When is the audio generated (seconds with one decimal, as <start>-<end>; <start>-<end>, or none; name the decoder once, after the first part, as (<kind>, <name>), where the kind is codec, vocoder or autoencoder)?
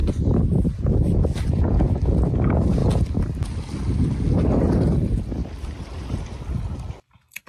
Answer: none